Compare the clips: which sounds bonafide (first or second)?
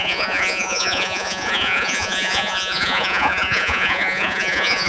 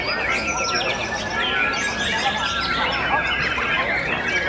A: second